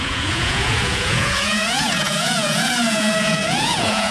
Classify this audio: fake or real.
fake